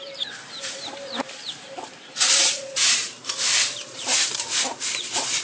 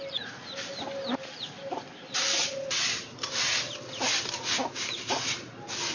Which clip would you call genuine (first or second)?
second